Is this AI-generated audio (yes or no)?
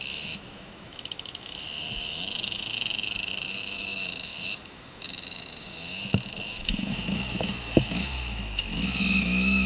yes